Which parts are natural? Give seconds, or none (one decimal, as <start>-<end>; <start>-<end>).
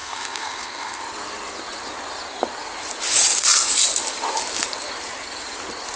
1.0-6.0